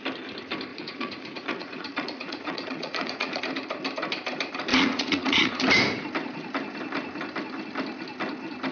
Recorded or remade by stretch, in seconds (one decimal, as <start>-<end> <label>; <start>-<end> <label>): 0.0-0.7 recorded; 0.7-3.4 remade; 3.4-4.7 recorded; 4.7-5.6 remade; 5.6-8.7 recorded

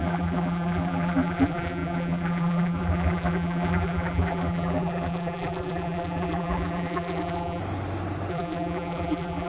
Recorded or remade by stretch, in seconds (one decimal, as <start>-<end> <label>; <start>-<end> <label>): 0.0-7.6 remade; 7.6-8.3 recorded; 8.3-9.5 remade

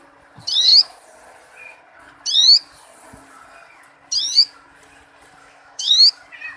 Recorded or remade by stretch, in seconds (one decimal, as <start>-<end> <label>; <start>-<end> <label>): 0.0-5.4 recorded; 5.4-6.1 remade; 6.1-6.6 recorded

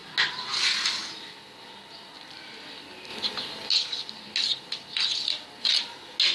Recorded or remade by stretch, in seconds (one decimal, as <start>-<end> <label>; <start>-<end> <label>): 0.0-3.1 recorded; 3.1-3.7 remade; 3.7-4.5 recorded; 4.5-5.8 remade; 5.8-6.3 recorded